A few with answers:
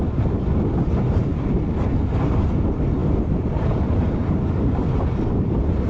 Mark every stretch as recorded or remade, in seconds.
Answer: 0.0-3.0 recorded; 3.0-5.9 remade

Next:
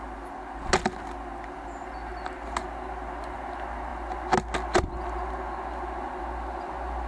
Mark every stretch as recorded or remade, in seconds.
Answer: 0.0-7.1 recorded

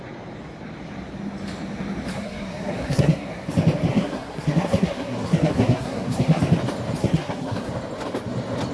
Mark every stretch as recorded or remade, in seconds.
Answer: 0.0-2.1 recorded; 2.1-3.3 remade; 3.3-3.9 recorded; 3.9-6.4 remade; 6.4-7.0 recorded; 7.0-7.7 remade; 7.7-8.7 recorded

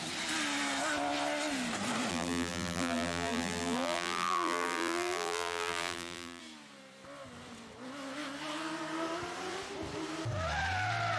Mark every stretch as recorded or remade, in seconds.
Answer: 0.0-2.1 recorded; 2.1-6.4 remade; 6.4-11.2 recorded

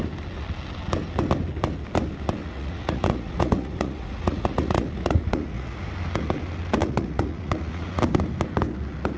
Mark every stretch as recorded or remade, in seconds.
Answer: 0.0-2.4 recorded; 2.4-5.8 remade; 5.8-6.8 recorded; 6.8-8.0 remade; 8.0-9.2 recorded

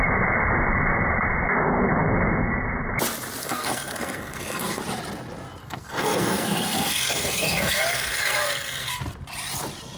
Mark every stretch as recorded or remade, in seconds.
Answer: 0.0-3.4 recorded; 3.4-4.8 remade; 4.8-5.6 recorded; 5.6-9.0 remade; 9.0-10.0 recorded

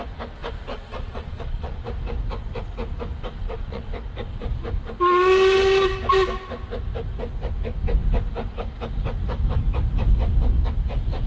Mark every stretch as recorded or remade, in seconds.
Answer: 0.0-0.7 recorded; 0.7-1.8 remade; 1.8-3.4 recorded; 3.4-3.9 remade; 3.9-11.3 recorded